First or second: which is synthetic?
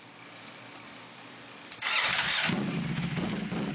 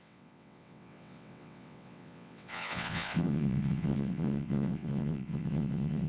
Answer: second